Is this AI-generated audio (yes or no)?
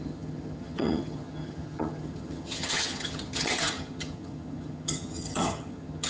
yes